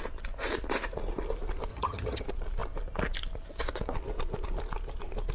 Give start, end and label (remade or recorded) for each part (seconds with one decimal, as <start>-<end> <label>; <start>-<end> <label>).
0.0-1.7 recorded; 1.7-2.2 remade; 2.2-5.3 recorded